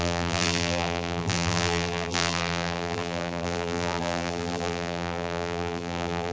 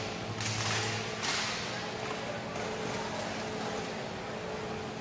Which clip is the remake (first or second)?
first